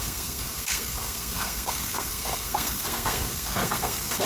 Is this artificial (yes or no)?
yes